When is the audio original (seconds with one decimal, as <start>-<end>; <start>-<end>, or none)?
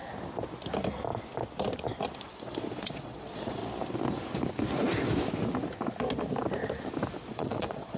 0.0-2.3; 3.6-7.3